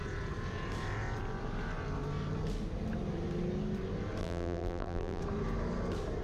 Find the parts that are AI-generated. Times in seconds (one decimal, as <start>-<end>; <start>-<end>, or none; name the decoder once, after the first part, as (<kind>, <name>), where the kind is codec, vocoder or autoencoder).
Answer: 4.2-5.2 (vocoder, BigVGAN v2)